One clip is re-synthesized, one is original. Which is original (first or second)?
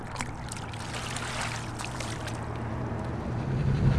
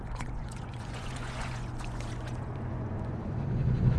first